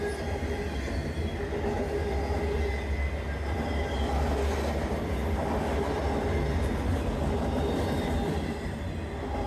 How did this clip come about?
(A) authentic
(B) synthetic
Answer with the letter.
A